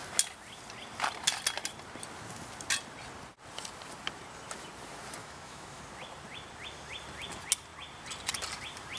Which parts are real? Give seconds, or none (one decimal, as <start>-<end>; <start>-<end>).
0.0-5.2; 5.8-9.0